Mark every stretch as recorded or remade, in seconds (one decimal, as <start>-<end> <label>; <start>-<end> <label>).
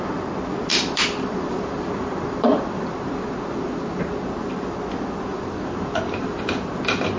0.0-0.7 recorded; 0.7-4.0 remade; 4.0-5.3 recorded; 5.3-6.4 remade; 6.4-7.2 recorded